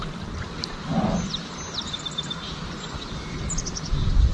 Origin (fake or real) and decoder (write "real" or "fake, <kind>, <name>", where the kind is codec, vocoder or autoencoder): real